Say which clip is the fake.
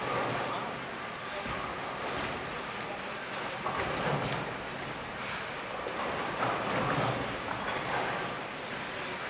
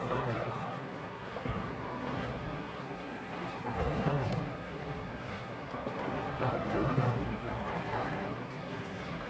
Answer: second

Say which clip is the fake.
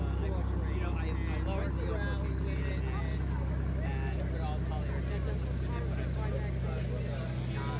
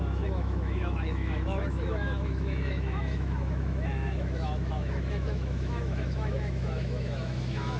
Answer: second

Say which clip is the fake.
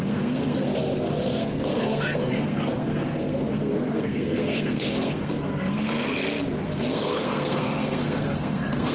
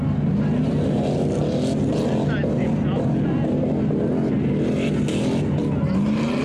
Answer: first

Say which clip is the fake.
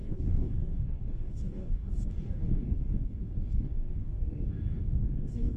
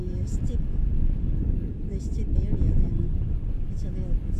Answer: first